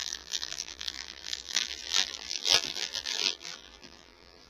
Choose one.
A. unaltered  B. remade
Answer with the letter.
B